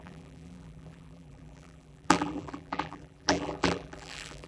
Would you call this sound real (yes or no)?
no